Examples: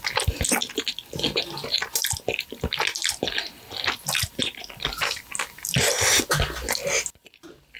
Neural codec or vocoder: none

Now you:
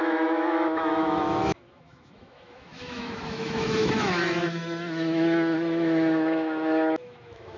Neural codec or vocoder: autoencoder, DAC-VAE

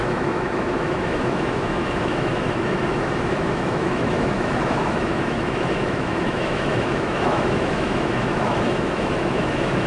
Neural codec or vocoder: autoencoder, DAC-VAE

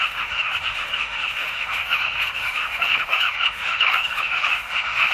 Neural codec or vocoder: autoencoder, DAC-VAE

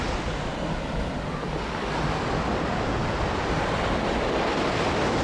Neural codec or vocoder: none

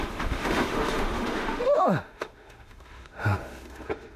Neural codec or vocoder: autoencoder, DAC-VAE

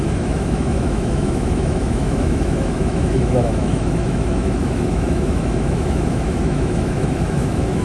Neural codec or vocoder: autoencoder, DAC-VAE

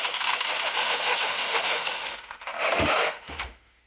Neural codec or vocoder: autoencoder, DAC-VAE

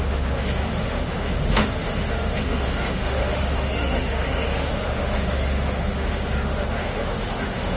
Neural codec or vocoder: autoencoder, DAC-VAE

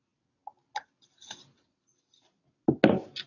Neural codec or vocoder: none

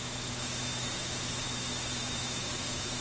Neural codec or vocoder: autoencoder, DAC-VAE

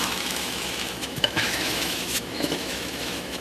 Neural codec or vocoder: autoencoder, DAC-VAE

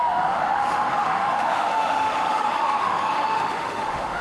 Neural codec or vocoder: autoencoder, DAC-VAE